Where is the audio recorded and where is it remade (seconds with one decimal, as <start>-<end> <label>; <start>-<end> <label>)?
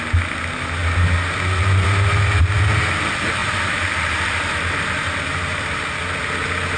0.0-3.4 recorded; 3.4-6.0 remade; 6.0-6.8 recorded